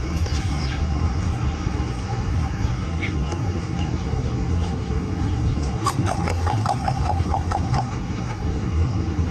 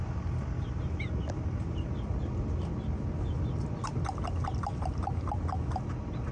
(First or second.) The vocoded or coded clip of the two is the first